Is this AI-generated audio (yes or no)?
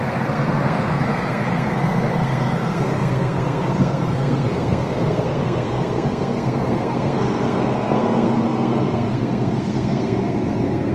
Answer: yes